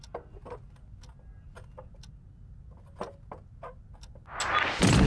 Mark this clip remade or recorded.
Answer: recorded